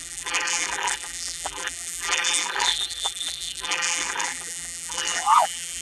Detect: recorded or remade remade